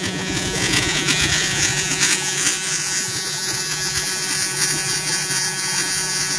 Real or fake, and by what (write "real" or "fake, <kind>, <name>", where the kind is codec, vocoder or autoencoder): fake, vocoder, Vocos